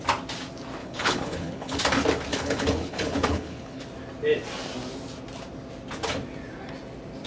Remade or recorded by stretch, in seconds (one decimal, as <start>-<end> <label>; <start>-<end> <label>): 0.0-0.8 recorded; 0.8-1.8 remade; 1.8-2.3 recorded; 2.3-3.8 remade; 3.8-7.3 recorded